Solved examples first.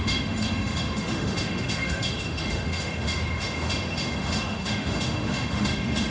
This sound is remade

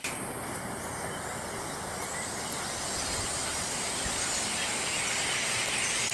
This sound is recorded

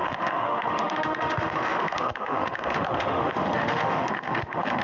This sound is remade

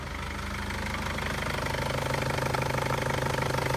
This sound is recorded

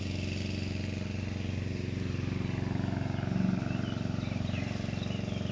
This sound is recorded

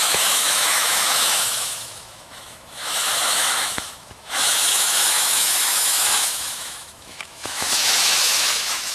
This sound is remade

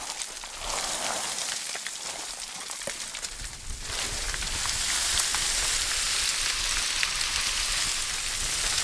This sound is recorded